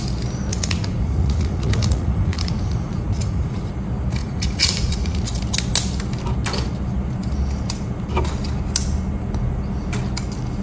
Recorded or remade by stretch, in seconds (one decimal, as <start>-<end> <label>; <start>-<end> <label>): 0.0-0.5 recorded; 0.5-3.7 remade; 3.7-4.2 recorded; 4.2-5.2 remade; 5.2-10.6 recorded